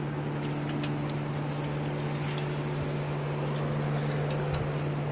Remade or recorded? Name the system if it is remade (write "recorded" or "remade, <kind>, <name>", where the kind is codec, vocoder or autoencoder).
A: recorded